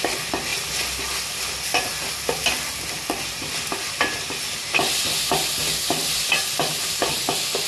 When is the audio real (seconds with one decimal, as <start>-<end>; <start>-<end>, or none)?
0.0-7.7